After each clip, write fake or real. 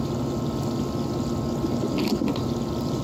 real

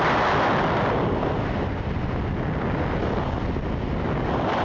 real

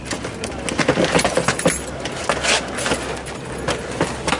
real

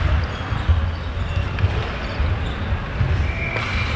real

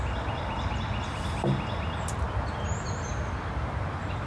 real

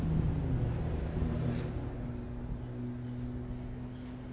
real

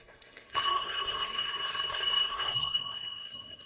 fake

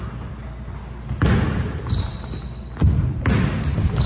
real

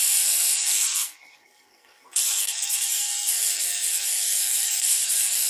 fake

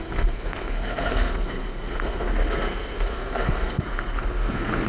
fake